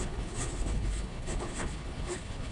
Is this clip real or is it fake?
fake